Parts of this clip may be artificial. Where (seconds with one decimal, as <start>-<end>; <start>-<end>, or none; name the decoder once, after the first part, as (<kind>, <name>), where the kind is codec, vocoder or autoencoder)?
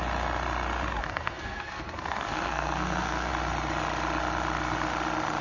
1.0-3.3 (codec, SNAC)